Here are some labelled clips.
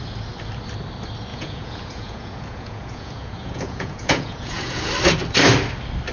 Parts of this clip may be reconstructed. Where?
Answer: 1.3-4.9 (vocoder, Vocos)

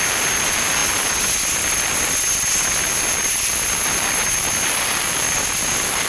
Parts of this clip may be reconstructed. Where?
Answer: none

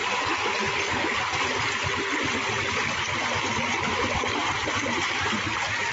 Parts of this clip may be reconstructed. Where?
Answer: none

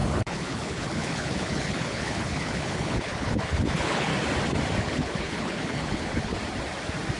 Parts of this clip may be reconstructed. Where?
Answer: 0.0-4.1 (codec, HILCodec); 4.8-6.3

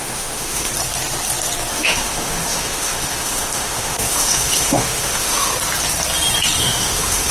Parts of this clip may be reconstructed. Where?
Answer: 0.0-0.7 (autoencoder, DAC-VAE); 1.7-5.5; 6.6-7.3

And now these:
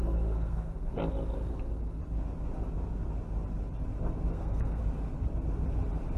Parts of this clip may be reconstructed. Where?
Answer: 0.0-1.0 (codec, SNAC); 1.5-2.0; 4.3-4.8

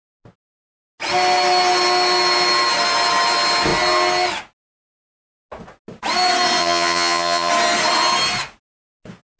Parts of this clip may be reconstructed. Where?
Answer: 6.6-7.5 (vocoder, HiFi-GAN)